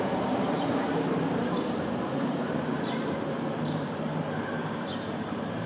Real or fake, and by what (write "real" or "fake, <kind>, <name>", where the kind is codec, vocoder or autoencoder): fake, vocoder, BigVGAN v2